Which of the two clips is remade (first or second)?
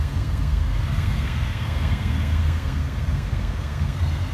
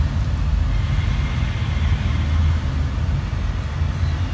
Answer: first